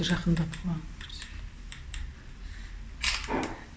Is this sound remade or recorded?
recorded